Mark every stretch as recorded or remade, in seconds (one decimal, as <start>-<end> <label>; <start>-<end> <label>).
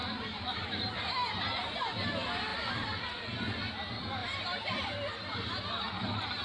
0.0-1.0 remade; 1.0-2.5 recorded; 2.5-3.7 remade; 3.7-4.2 recorded; 4.2-4.9 remade; 4.9-6.4 recorded